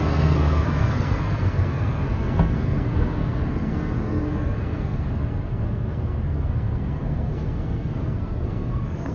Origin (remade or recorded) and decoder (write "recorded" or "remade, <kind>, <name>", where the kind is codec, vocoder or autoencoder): remade, codec, SNAC